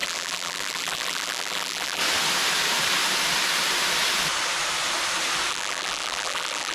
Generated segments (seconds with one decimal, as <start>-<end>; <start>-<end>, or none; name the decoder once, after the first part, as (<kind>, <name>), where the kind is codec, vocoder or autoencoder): 0.0-2.0 (vocoder, BigVGAN v2); 5.5-6.7